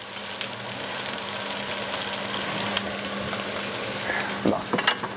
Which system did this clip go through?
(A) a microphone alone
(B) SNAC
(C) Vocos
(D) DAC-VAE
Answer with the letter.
A